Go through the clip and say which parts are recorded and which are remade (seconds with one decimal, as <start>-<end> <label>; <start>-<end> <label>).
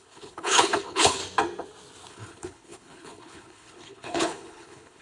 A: 0.0-1.2 remade; 1.2-2.1 recorded; 2.1-5.0 remade